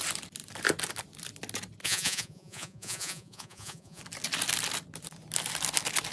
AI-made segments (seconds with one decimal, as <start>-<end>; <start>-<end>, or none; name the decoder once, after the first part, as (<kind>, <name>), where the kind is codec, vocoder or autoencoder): 1.8-4.0 (vocoder, Vocos)